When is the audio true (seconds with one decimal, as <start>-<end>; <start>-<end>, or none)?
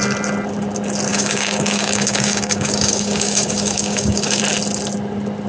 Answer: 0.0-1.1; 4.4-5.5